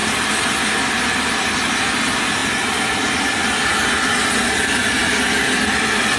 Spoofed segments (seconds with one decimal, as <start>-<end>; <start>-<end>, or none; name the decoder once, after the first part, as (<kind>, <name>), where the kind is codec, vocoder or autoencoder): none